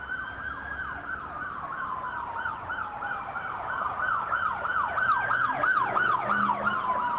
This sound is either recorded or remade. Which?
recorded